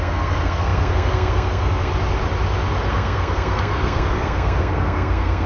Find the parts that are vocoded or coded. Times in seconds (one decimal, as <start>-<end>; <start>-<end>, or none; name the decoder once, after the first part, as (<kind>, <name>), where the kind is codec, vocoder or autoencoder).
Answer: 0.0-1.9 (codec, SNAC); 2.9-5.5